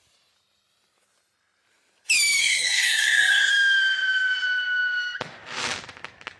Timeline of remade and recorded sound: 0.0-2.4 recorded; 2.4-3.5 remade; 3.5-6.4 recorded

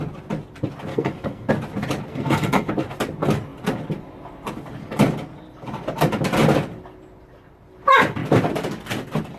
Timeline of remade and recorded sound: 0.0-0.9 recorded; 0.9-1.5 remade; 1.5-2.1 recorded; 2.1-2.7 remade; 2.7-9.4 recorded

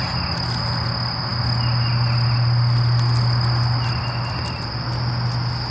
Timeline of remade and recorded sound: 0.0-5.7 recorded

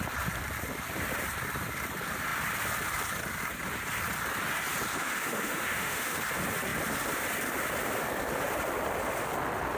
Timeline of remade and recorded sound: 0.0-4.9 recorded; 4.9-6.2 remade; 6.2-9.8 recorded

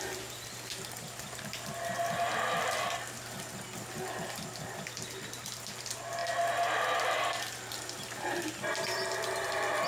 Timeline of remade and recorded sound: 0.0-9.9 recorded

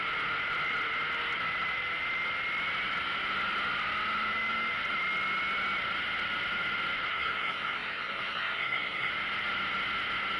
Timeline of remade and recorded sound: 0.0-7.1 recorded; 7.1-9.1 remade; 9.1-10.4 recorded